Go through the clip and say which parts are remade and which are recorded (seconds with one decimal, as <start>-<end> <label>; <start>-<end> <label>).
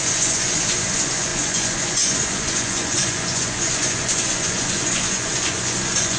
0.0-6.2 remade